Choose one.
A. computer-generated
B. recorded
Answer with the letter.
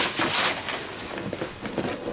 B